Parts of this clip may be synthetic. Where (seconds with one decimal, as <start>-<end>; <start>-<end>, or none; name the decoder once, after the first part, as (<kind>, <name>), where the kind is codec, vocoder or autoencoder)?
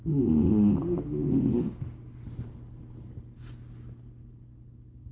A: none